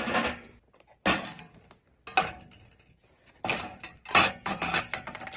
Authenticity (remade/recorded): recorded